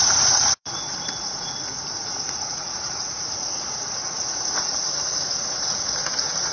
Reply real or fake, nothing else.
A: fake